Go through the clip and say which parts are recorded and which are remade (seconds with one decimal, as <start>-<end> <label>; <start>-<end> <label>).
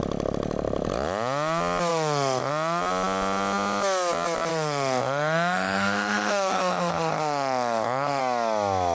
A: 0.0-1.9 recorded; 1.9-2.5 remade; 2.5-4.5 recorded; 4.5-8.2 remade; 8.2-8.9 recorded